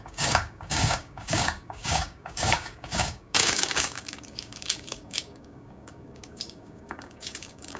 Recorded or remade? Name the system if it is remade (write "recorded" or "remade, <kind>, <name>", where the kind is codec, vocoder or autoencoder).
remade, codec, DAC